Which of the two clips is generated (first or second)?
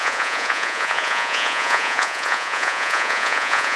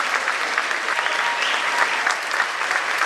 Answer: first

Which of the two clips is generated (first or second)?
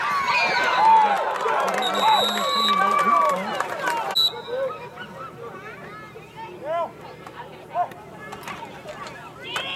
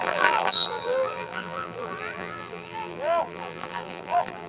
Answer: second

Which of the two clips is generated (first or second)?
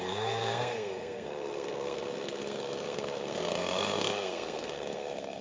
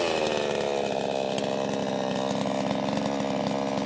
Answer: first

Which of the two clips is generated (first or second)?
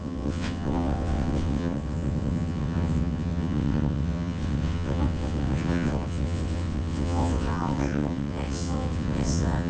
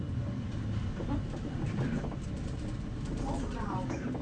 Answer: first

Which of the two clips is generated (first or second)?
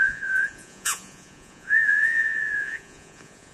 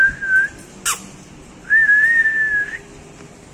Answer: first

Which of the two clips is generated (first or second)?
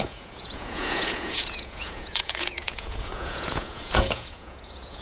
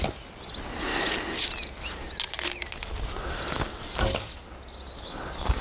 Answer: first